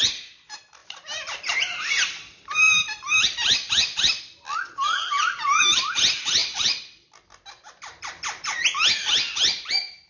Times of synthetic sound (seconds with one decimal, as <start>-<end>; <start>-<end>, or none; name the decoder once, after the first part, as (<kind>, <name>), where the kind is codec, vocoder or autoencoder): 0.8-5.9 (vocoder, BigVGAN v2); 6.4-8.6